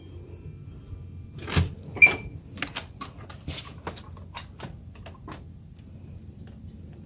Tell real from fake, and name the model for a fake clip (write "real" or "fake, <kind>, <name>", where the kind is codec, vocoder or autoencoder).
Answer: real